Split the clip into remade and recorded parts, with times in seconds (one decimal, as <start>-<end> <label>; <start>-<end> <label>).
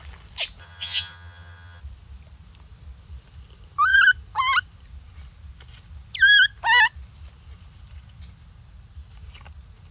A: 0.0-0.6 recorded; 0.6-1.8 remade; 1.8-9.9 recorded